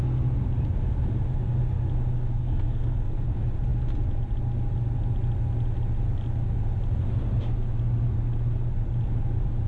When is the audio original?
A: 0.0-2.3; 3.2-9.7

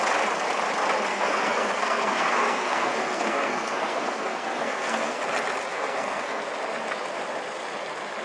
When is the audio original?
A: 0.0-1.1; 5.2-5.7; 6.4-8.2

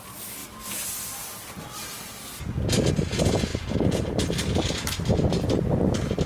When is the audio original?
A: 0.0-6.3

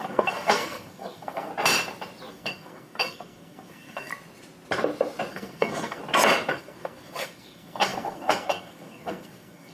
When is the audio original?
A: 1.5-2.3; 4.1-5.3; 6.0-6.5

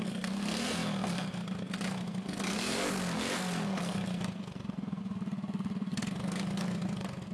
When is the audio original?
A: none